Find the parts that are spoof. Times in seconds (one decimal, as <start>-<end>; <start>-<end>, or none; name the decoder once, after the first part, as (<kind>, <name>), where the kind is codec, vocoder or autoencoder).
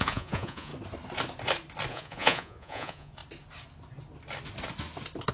0.0-0.7 (vocoder, Vocos); 1.9-3.2